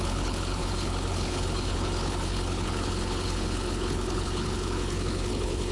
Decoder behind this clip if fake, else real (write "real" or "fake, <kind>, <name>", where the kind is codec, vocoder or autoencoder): fake, codec, HILCodec